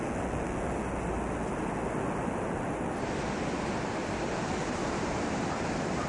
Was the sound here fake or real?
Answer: real